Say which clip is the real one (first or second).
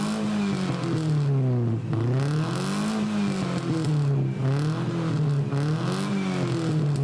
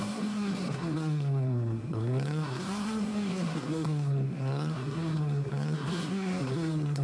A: first